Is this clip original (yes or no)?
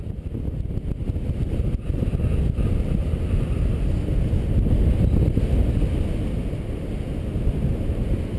yes